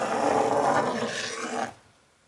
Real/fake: real